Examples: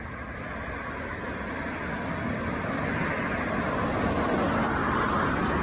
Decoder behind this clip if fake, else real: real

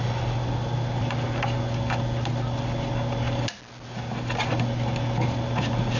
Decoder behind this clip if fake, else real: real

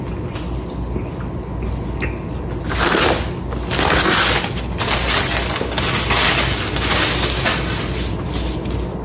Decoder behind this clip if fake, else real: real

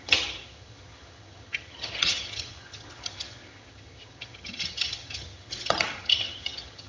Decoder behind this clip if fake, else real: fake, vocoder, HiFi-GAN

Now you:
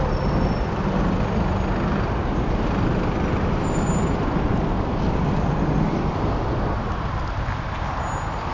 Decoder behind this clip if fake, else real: real